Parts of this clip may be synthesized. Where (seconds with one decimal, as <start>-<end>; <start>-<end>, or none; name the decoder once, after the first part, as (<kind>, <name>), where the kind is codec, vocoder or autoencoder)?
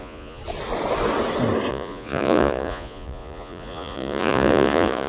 0.0-0.4 (vocoder, Vocos); 1.7-5.1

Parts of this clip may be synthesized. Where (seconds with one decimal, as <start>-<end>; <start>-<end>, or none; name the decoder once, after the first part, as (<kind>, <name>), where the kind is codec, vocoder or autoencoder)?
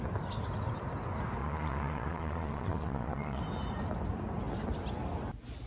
1.4-3.4 (vocoder, Vocos)